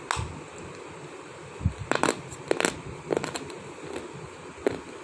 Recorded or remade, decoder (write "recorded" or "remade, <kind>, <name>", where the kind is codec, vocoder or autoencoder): recorded